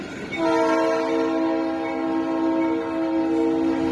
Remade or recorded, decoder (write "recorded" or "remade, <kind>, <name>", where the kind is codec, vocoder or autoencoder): recorded